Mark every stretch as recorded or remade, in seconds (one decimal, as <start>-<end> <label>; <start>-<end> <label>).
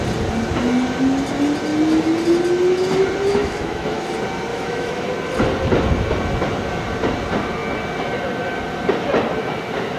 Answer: 0.0-3.4 recorded; 3.4-4.1 remade; 4.1-4.5 recorded; 4.5-5.1 remade; 5.1-10.0 recorded